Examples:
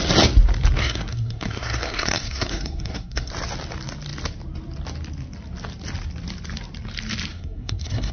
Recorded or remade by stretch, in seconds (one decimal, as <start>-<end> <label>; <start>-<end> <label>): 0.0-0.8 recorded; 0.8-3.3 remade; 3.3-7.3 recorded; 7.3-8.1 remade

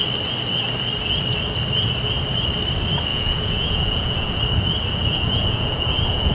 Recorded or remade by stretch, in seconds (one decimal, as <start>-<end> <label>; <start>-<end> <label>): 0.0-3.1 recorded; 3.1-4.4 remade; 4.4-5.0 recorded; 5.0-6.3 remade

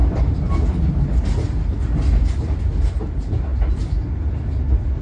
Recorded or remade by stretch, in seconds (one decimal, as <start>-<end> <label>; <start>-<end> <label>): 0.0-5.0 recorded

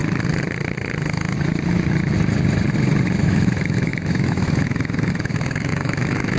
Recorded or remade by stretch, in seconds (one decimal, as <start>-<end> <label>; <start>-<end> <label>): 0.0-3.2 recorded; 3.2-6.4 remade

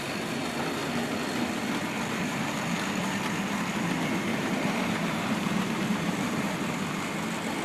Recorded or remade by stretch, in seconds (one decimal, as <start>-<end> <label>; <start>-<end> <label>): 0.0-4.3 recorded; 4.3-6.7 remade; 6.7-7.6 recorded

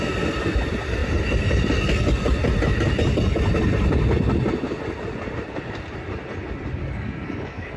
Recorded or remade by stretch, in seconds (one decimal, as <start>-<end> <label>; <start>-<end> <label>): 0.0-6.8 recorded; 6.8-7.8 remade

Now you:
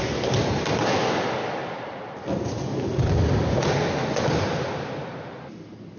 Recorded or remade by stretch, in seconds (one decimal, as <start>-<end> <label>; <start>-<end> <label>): 0.0-6.0 recorded